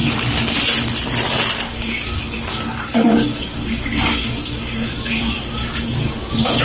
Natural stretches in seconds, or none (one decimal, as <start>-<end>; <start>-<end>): 0.0-1.7